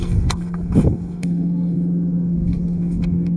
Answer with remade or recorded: remade